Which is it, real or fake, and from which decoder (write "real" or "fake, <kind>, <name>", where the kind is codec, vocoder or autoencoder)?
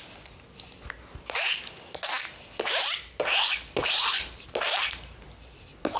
real